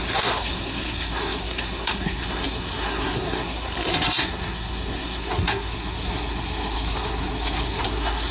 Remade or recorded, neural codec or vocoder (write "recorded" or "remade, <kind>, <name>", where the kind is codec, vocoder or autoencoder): remade, codec, SNAC